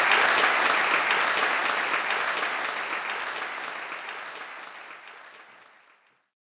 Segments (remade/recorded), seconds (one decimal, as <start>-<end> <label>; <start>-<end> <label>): 0.0-6.4 recorded